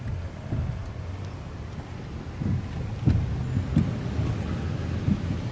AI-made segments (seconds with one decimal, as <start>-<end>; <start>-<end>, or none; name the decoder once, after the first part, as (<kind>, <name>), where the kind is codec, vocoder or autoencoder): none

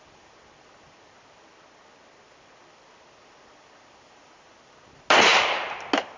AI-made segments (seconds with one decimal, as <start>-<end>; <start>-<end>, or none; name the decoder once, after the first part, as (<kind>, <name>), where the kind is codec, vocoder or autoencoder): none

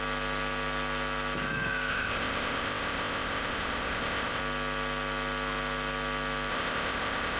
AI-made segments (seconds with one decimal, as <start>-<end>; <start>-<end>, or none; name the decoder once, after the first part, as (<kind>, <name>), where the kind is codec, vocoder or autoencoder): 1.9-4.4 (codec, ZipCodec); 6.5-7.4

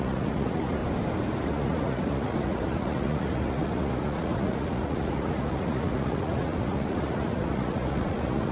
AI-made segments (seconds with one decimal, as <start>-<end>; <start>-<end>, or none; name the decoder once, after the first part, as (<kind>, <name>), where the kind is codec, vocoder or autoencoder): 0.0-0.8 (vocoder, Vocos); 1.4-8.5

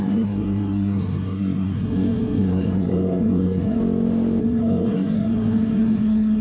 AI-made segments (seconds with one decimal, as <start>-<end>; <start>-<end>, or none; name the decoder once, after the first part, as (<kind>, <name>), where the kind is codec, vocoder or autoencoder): 0.0-3.8 (codec, SNAC); 4.4-6.4

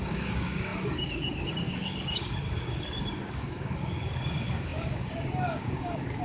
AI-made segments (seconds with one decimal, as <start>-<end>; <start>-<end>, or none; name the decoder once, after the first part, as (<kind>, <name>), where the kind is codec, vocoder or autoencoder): 0.0-6.2 (codec, DAC)